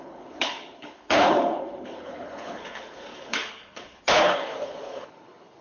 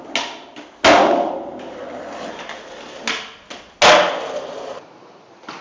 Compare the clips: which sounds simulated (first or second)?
first